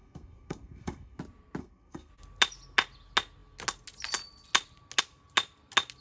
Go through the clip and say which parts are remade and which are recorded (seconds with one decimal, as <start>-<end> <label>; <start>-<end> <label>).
0.0-1.2 remade; 1.2-1.6 recorded; 1.6-2.1 remade; 2.1-6.0 recorded